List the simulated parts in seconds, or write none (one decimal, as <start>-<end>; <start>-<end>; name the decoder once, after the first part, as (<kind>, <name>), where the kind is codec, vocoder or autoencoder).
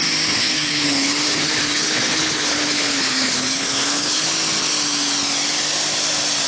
0.4-4.3 (codec, HILCodec)